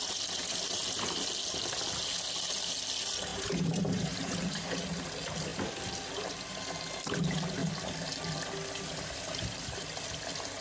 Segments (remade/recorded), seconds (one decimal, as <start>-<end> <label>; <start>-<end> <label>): 0.0-3.3 recorded; 3.3-4.8 remade; 4.8-10.6 recorded